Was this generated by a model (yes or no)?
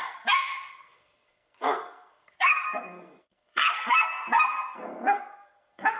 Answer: yes